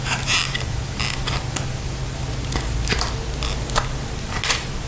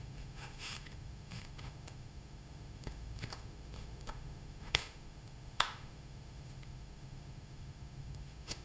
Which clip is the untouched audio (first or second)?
first